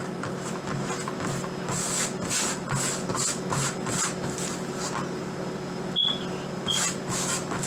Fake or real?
real